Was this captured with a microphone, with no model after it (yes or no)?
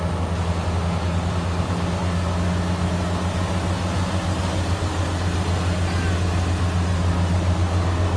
yes